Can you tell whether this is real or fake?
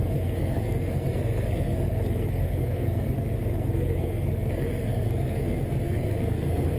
fake